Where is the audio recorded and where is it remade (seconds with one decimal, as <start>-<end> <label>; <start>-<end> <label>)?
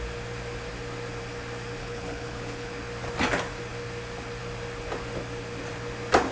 0.0-1.8 recorded; 1.8-2.7 remade; 2.7-6.3 recorded